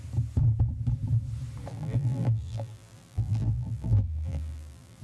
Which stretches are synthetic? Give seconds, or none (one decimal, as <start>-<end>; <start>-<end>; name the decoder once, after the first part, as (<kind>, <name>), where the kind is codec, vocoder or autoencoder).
1.7-5.0 (vocoder, BigVGAN v2)